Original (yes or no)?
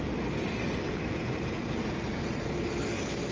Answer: yes